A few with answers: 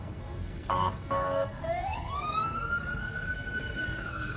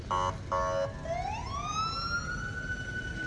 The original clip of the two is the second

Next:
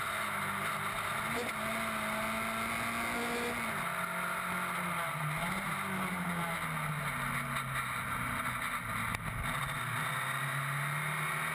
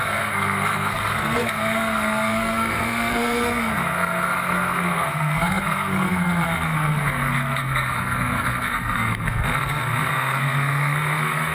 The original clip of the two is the first